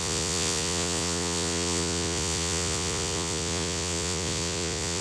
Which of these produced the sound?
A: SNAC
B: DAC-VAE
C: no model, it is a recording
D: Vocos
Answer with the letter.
D